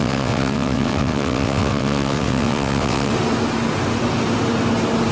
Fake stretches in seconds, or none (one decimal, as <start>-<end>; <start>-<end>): 0.0-3.1